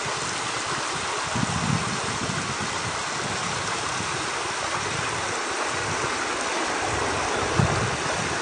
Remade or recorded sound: recorded